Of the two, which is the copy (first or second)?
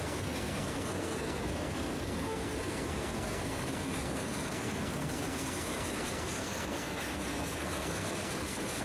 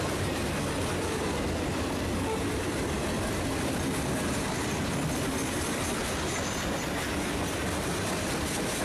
first